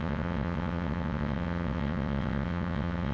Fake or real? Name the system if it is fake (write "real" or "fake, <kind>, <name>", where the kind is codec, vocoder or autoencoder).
fake, vocoder, WaveNeXt